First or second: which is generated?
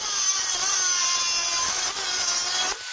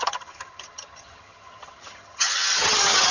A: second